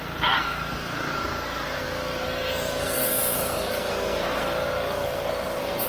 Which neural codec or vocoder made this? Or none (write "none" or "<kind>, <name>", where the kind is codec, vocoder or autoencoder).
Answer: codec, SNAC